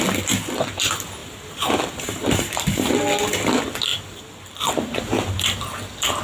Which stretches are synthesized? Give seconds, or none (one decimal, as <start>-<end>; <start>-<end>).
1.2-2.9; 3.9-5.0